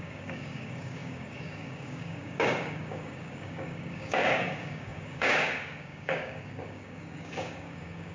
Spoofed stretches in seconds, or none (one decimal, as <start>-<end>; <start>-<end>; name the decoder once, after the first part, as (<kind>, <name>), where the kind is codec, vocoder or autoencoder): 0.0-8.1 (codec, DAC)